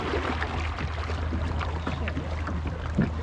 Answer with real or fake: real